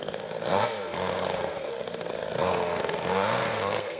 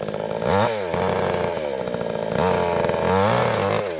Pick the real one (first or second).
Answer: second